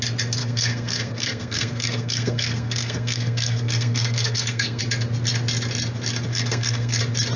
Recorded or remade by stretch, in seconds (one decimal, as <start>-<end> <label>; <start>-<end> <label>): 0.0-0.4 recorded; 0.4-4.8 remade; 4.8-6.3 recorded; 6.3-7.0 remade; 7.0-7.4 recorded

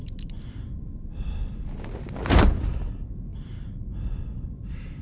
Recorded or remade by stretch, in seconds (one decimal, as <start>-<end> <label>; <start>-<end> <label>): 0.0-5.0 recorded

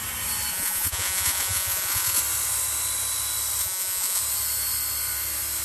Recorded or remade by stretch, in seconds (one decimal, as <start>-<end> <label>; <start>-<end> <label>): 0.0-0.5 recorded; 0.5-2.2 remade; 2.2-3.6 recorded; 3.6-4.2 remade; 4.2-5.6 recorded

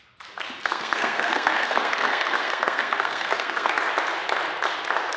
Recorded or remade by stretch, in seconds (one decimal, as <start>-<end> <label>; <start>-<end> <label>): 0.0-0.6 recorded; 0.6-3.7 remade; 3.7-5.2 recorded